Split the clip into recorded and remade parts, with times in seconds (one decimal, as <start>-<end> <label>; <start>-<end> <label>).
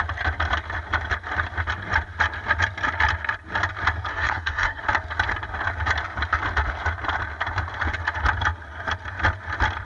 0.0-4.1 recorded; 4.1-4.8 remade; 4.8-9.9 recorded